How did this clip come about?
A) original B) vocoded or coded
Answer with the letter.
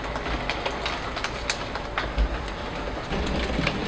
A